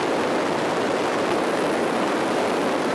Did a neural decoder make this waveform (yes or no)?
yes